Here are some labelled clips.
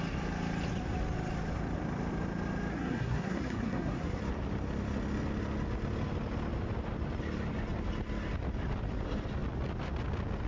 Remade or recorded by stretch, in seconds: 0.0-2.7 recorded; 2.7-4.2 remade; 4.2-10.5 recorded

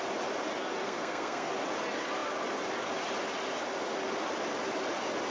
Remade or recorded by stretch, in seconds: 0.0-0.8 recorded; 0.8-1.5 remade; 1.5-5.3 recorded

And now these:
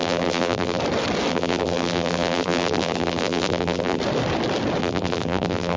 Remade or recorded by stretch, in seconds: 0.0-0.8 remade; 0.8-1.3 recorded; 1.3-4.0 remade; 4.0-4.8 recorded; 4.8-5.8 remade